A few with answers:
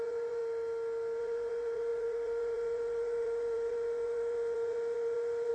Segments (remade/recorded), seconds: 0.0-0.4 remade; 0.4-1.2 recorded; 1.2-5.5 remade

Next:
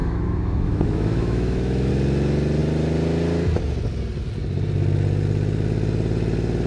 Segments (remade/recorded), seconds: 0.0-1.9 remade; 1.9-6.7 recorded